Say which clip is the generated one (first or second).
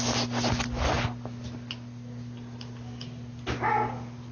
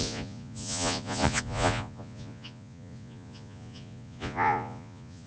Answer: second